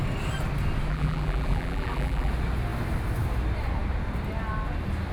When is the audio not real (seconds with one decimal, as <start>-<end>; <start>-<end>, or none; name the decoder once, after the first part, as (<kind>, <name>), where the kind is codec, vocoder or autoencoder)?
0.9-2.3 (vocoder, BigVGAN v2)